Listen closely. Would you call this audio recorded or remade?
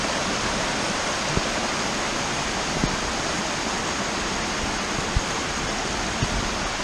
recorded